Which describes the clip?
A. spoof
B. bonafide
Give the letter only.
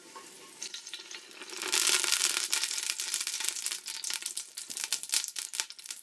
B